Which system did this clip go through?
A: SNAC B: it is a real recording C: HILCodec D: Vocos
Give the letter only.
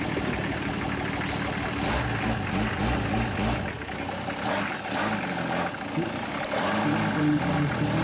B